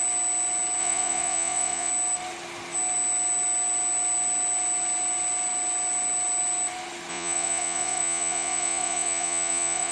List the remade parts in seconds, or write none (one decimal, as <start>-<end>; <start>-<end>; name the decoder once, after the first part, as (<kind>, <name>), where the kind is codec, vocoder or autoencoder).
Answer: 0.8-1.9 (vocoder, Vocos); 7.1-9.9

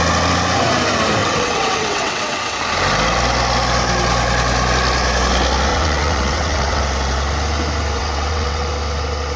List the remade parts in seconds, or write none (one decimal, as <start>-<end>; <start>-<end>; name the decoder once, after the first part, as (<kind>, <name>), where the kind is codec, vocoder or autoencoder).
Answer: 1.2-2.6 (vocoder, WaveNeXt); 5.7-6.8; 8.0-8.7